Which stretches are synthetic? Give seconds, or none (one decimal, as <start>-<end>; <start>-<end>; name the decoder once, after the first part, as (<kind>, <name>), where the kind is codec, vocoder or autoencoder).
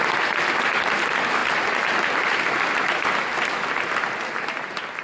none